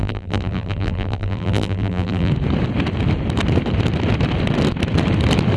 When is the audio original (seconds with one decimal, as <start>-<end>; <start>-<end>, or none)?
2.3-5.6